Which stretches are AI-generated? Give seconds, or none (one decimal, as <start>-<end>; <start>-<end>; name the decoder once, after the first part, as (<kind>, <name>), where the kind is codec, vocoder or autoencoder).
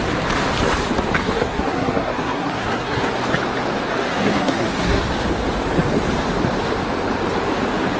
1.2-3.1 (codec, SNAC); 4.1-5.0